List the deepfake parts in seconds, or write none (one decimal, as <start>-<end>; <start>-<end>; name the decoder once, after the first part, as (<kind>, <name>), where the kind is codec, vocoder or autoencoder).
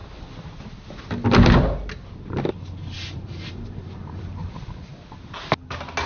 2.5-4.9 (vocoder, BigVGAN v2)